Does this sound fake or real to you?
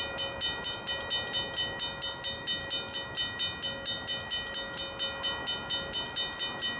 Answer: real